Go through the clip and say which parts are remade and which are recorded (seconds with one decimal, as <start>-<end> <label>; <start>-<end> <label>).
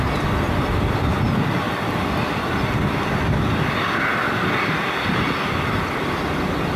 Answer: 0.0-6.8 recorded